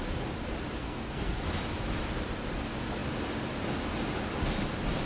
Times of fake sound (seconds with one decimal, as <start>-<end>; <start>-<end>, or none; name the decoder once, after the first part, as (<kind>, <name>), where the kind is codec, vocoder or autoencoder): 0.8-1.4 (codec, SNAC)